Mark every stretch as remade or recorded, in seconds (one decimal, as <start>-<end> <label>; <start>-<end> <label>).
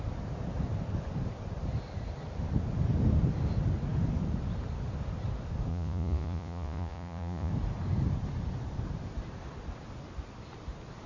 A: 0.0-5.7 recorded; 5.7-7.5 remade; 7.5-11.1 recorded